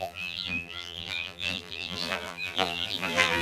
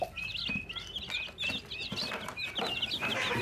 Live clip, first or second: second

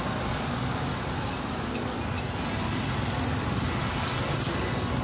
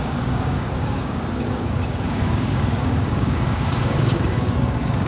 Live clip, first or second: first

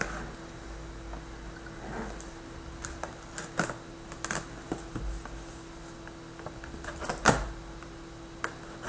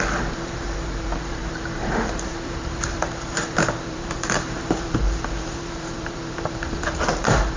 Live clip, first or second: first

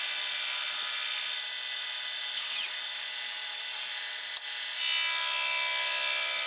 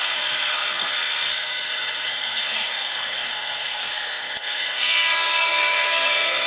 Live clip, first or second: first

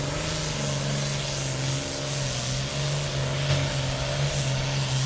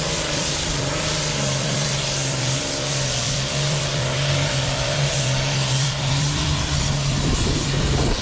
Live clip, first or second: first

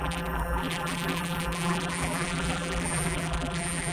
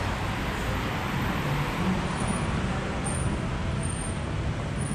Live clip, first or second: second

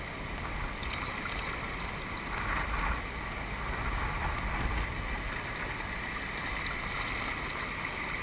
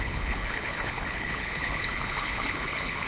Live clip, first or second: first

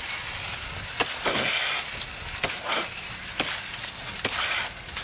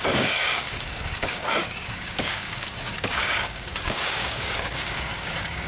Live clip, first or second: first